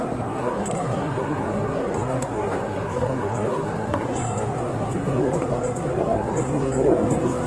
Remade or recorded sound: remade